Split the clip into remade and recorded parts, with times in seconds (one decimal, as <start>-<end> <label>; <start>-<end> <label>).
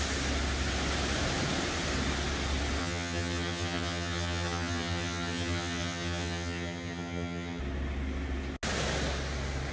0.0-2.8 recorded; 2.8-7.6 remade; 7.6-9.7 recorded